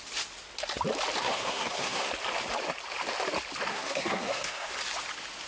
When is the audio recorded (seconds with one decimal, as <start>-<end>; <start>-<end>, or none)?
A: 0.0-1.2; 2.1-3.7; 4.7-5.5